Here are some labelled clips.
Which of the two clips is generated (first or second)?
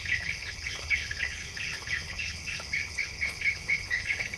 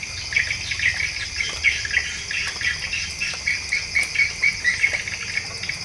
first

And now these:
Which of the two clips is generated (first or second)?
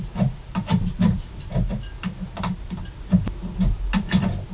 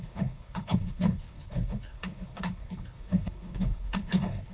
second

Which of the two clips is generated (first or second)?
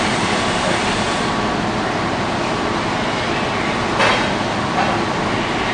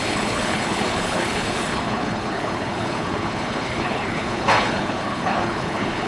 second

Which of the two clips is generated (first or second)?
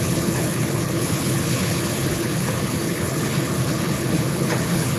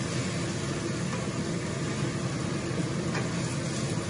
first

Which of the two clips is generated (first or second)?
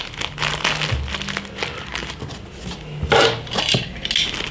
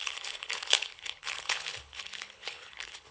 second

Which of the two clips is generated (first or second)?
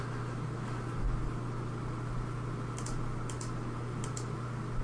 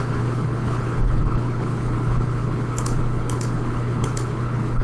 second